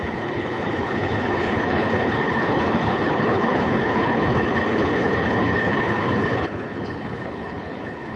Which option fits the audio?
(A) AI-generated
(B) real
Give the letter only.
A